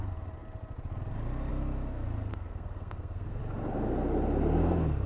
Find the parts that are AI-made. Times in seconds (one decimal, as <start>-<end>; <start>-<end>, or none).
2.3-3.4